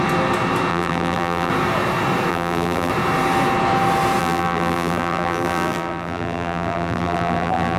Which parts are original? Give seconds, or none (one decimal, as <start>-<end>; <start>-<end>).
0.0-0.7; 1.5-2.3; 2.9-4.2